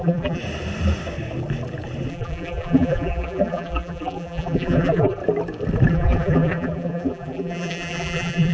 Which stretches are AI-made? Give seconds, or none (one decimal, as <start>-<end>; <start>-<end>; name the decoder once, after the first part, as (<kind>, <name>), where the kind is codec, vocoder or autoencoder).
0.0-0.4 (vocoder, BigVGAN v2); 2.1-5.2; 5.9-8.5